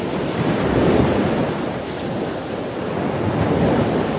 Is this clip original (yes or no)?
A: yes